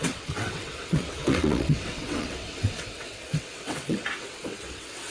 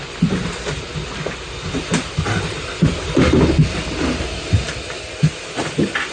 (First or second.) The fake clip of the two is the first